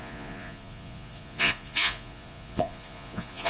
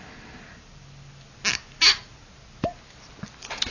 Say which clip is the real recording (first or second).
second